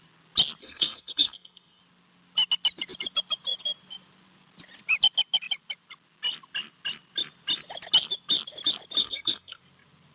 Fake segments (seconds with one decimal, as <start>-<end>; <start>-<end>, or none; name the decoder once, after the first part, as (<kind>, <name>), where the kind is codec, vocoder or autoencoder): 0.6-1.8 (codec, SNAC); 9.0-9.6